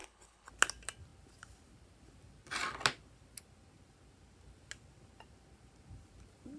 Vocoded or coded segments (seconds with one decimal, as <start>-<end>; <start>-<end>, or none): 0.0-0.5